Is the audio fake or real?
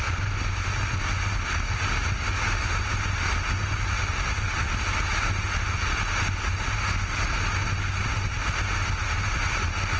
real